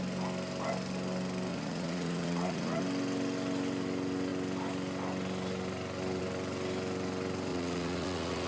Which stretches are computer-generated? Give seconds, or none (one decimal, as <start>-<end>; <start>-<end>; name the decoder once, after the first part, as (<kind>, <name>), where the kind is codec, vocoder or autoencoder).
1.5-2.8 (vocoder, Vocos); 7.5-8.5